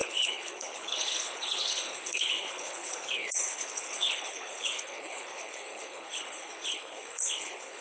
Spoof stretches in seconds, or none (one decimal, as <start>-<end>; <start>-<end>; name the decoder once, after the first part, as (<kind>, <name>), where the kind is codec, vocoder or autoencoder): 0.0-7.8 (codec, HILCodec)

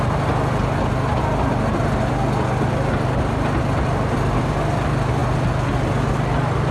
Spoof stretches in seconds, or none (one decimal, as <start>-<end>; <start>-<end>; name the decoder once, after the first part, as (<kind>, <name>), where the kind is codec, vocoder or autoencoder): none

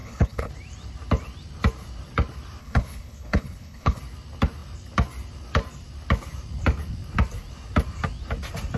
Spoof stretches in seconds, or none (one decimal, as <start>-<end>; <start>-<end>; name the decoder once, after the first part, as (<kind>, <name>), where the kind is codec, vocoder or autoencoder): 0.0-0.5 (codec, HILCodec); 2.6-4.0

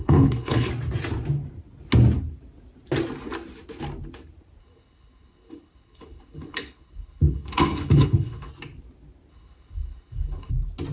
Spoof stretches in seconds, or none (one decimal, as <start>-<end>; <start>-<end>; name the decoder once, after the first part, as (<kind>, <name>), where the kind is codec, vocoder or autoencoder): 0.0-0.7 (codec, HILCodec); 4.6-8.5; 9.3-10.5

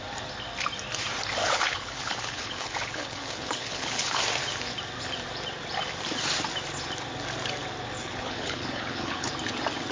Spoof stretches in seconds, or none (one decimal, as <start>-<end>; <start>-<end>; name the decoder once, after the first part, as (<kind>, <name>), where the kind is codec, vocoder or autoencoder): 1.4-4.2 (codec, HILCodec); 8.0-9.3

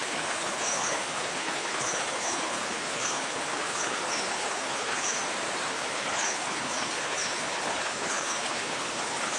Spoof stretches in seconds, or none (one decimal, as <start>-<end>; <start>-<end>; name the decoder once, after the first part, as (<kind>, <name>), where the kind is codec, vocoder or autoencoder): 0.0-5.2 (codec, HILCodec); 5.7-9.4

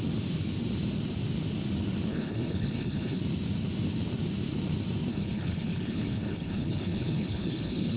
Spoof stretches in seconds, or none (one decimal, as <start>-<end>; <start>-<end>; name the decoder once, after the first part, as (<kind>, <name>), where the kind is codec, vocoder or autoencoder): 2.1-3.2 (codec, HILCodec); 5.1-8.0